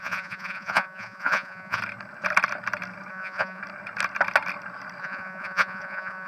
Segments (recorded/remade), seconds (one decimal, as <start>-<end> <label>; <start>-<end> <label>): 0.0-1.8 remade; 1.8-3.1 recorded; 3.1-3.6 remade; 3.6-5.0 recorded; 5.0-6.3 remade